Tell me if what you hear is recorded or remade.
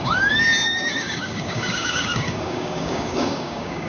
remade